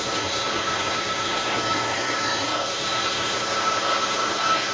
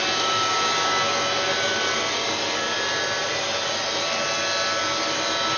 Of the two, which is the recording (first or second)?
second